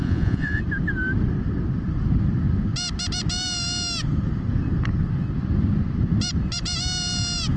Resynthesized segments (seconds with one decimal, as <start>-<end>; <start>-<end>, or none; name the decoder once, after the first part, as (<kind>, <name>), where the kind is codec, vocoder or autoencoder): 0.0-0.6 (vocoder, Vocos)